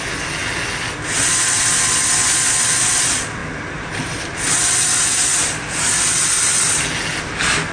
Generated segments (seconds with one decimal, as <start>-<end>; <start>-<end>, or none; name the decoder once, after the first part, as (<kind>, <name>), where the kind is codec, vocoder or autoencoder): none